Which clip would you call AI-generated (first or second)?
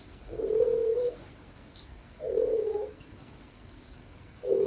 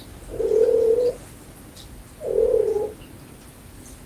first